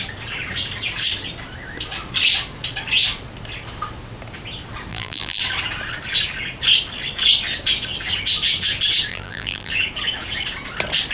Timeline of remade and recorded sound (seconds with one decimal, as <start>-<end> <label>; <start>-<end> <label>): 0.0-4.9 recorded; 4.9-5.4 remade; 5.4-9.1 recorded; 9.1-9.7 remade; 9.7-11.1 recorded